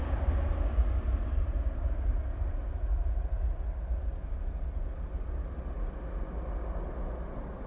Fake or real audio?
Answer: real